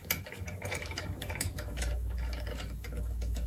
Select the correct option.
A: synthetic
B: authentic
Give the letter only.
A